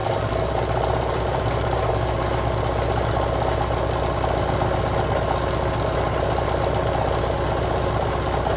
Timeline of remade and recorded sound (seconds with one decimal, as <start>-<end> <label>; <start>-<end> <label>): 0.0-1.9 remade; 1.9-8.6 recorded